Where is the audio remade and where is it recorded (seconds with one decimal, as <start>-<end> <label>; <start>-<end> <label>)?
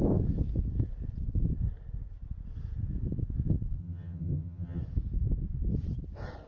0.0-3.8 recorded; 3.8-4.8 remade; 4.8-6.5 recorded